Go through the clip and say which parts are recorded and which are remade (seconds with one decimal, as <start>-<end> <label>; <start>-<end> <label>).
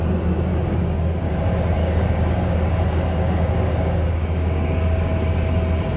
0.0-0.5 recorded; 0.5-1.3 remade; 1.3-1.8 recorded; 1.8-5.4 remade; 5.4-6.0 recorded